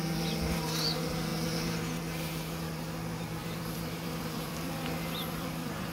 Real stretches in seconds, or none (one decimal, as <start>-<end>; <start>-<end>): 0.0-3.4